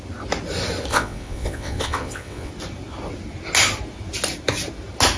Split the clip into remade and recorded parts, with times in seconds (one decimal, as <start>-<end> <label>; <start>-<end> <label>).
0.0-0.9 recorded; 0.9-2.5 remade; 2.5-5.2 recorded